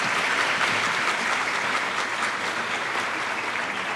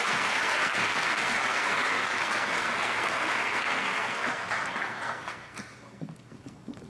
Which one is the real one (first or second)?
first